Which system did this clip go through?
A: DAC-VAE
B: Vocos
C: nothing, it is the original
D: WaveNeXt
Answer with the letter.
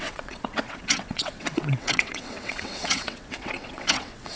D